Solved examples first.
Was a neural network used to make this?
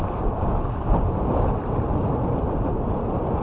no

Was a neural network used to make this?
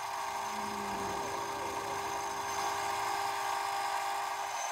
no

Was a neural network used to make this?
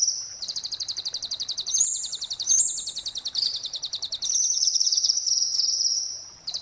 yes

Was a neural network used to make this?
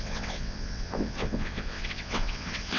yes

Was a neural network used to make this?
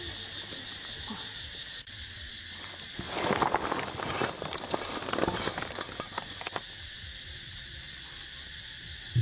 yes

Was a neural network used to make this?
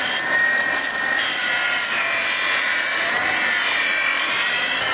no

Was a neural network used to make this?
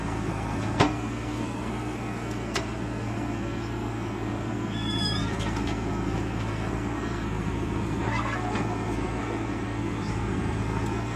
yes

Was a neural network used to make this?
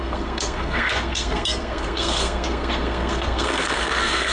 yes